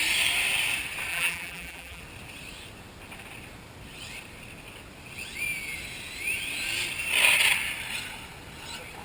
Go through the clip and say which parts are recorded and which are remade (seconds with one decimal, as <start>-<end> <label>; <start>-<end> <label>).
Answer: 0.0-1.1 recorded; 1.1-2.0 remade; 2.0-9.0 recorded